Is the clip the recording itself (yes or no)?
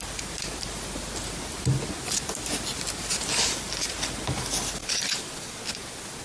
yes